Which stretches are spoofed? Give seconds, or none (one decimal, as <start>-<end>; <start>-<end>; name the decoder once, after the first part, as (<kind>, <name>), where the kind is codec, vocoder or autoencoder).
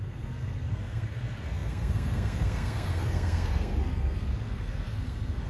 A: 0.0-5.5 (codec, SNAC)